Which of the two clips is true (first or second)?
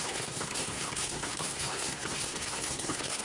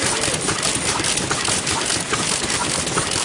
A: second